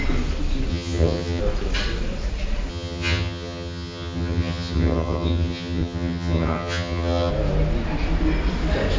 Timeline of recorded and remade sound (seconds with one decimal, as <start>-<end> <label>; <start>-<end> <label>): 0.0-0.7 recorded; 0.7-1.4 remade; 1.4-2.7 recorded; 2.7-7.3 remade; 7.3-9.0 recorded

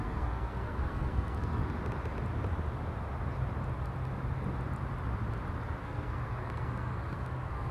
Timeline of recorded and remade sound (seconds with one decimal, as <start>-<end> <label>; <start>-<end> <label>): 0.0-1.6 remade; 1.6-5.8 recorded; 5.8-7.7 remade

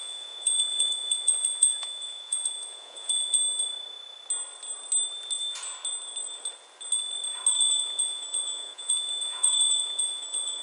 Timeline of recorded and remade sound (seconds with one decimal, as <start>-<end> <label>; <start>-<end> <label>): 0.0-3.4 remade; 3.4-7.6 recorded; 7.6-10.6 remade

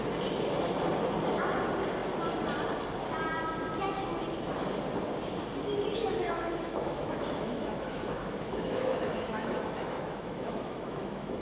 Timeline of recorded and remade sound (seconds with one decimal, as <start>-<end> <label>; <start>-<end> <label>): 0.0-6.2 recorded; 6.2-11.4 remade

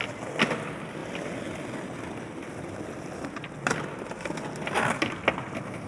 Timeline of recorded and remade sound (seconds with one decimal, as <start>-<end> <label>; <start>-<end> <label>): 0.0-5.9 recorded

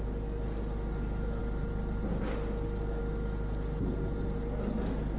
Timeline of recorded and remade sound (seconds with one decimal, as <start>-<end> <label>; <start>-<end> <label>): 0.0-5.2 recorded

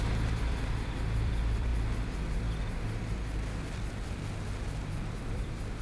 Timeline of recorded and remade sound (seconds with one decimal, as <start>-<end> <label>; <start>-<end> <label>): 0.0-1.7 remade; 1.7-5.2 recorded; 5.2-5.8 remade